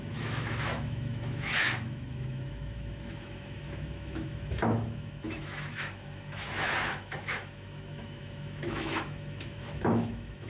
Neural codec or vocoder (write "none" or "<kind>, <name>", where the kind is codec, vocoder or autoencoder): autoencoder, DAC-VAE